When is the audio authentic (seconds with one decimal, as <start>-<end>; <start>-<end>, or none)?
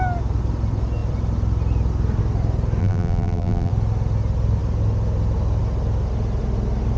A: 0.0-2.8; 3.7-7.0